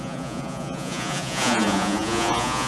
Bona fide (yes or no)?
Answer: no